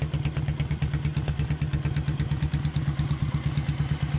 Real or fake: real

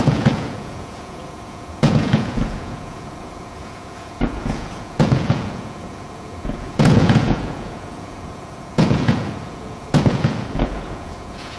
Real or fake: fake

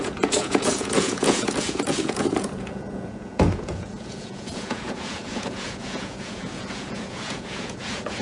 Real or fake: fake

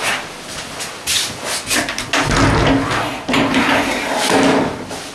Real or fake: real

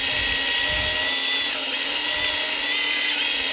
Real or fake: real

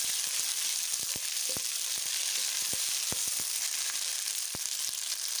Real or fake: real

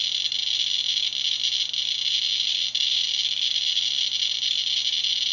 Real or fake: real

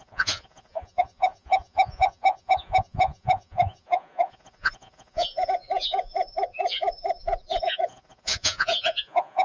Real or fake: fake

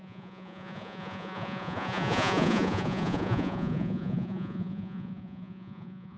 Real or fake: fake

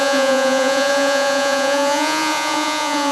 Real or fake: fake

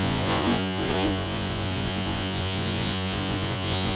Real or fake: fake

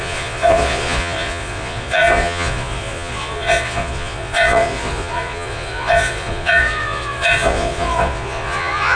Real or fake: fake